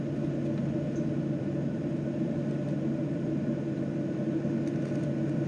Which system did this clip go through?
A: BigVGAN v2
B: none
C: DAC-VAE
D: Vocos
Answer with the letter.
B